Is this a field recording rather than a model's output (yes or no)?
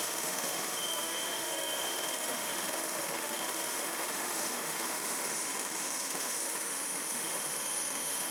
no